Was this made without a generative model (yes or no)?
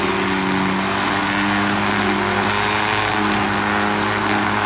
yes